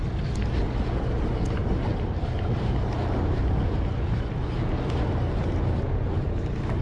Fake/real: real